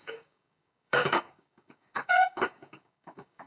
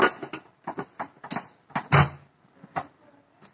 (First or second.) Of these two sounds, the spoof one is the first